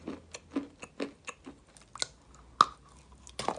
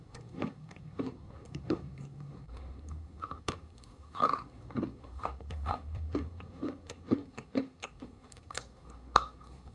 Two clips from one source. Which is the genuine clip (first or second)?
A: first